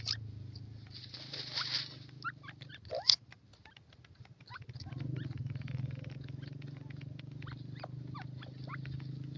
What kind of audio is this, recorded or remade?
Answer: recorded